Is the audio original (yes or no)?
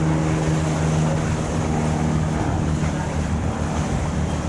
yes